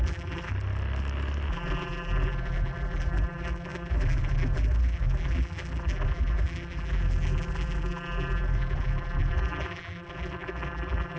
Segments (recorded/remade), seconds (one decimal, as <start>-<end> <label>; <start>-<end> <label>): 0.0-0.5 remade; 0.5-1.5 recorded; 1.5-11.2 remade